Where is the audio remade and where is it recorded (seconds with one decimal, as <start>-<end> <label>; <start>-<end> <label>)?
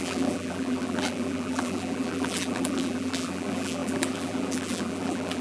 0.0-5.4 remade